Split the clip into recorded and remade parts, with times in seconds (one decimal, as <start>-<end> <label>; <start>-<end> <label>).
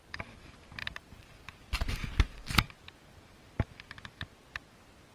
0.0-0.8 recorded; 0.8-1.6 remade; 1.6-5.1 recorded